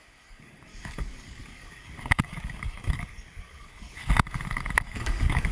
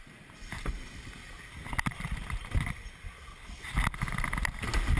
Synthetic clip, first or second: first